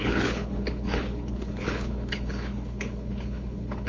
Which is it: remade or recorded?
remade